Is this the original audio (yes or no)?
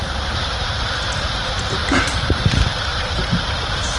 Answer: no